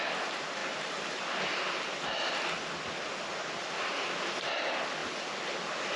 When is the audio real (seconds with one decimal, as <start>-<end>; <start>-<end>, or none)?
0.0-0.6; 1.2-6.0